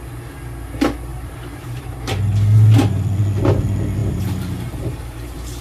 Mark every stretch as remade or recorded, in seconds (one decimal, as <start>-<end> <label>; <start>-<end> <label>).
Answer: 0.0-1.1 recorded; 1.1-2.1 remade; 2.1-4.0 recorded; 4.0-5.6 remade